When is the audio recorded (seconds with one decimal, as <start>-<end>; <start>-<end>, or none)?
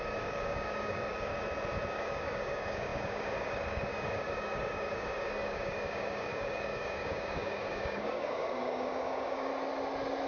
1.3-1.9; 9.5-10.3